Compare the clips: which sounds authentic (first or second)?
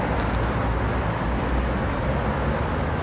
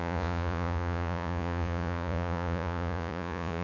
first